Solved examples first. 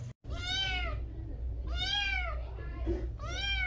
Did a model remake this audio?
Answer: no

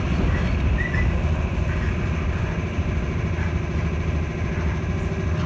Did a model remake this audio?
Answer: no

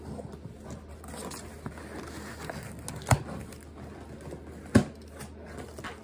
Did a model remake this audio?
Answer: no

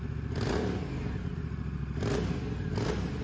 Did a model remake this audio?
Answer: no